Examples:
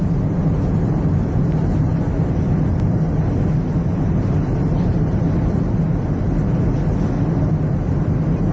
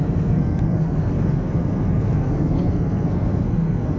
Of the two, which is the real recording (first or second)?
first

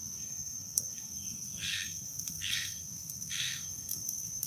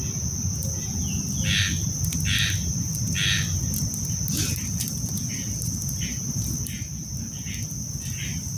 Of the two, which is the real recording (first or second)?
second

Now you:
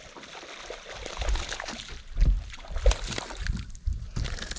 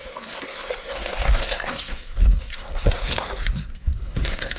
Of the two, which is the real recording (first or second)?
first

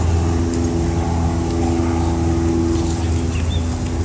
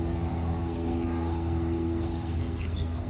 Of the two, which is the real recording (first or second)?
first